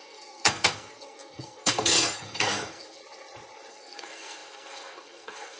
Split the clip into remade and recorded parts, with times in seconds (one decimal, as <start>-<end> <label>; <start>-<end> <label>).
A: 0.0-3.0 remade; 3.0-3.7 recorded; 3.7-5.6 remade